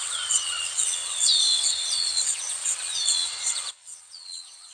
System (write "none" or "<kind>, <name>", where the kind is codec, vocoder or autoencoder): vocoder, WaveNeXt